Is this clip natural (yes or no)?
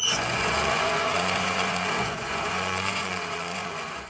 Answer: no